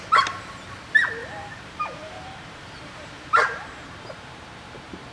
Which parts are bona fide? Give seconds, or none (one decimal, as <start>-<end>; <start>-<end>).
0.0-1.2; 4.3-5.1